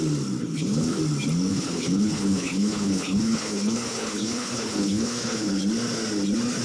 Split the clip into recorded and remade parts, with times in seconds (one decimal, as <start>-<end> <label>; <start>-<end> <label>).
0.0-0.4 recorded; 0.4-1.0 remade; 1.0-1.5 recorded; 1.5-5.5 remade; 5.5-6.6 recorded